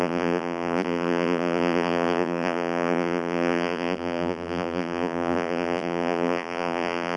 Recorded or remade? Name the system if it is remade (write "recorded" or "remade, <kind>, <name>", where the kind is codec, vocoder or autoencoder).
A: remade, vocoder, BigVGAN v2